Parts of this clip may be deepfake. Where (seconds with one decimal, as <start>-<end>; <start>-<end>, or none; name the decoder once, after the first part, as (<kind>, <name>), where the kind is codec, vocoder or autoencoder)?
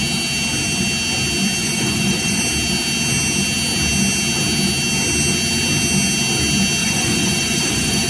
1.6-2.4 (vocoder, Vocos); 6.8-8.1